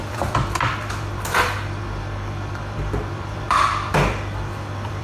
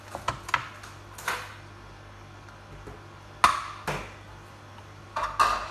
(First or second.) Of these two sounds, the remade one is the first